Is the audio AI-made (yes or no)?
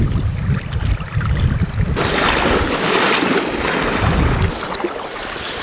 no